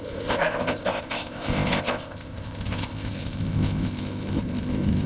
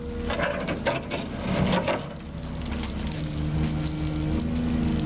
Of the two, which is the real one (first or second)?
second